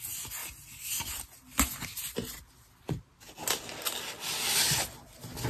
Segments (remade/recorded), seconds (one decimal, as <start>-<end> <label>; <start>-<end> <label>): 0.0-5.5 recorded